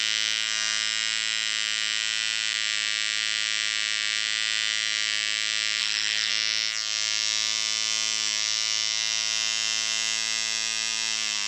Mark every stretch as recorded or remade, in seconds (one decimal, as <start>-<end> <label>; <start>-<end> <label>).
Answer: 0.0-5.8 recorded; 5.8-6.3 remade; 6.3-11.5 recorded